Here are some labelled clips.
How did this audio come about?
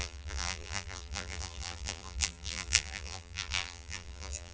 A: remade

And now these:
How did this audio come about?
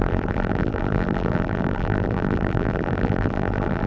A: remade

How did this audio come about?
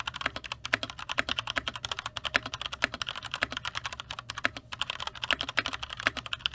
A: recorded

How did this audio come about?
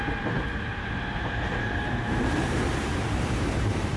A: remade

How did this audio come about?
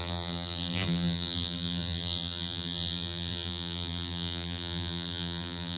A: remade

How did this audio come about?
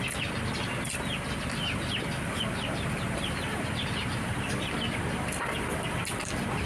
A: remade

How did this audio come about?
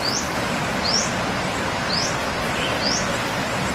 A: remade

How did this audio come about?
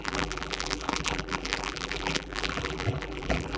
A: remade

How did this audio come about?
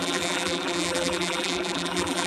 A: remade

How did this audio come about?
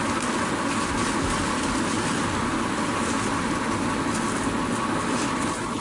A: recorded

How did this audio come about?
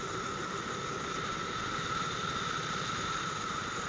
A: recorded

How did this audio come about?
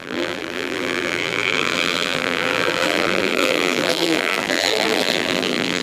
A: remade